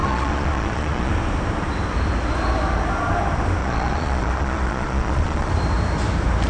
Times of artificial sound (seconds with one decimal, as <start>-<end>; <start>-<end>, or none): 0.0-1.1; 3.6-5.5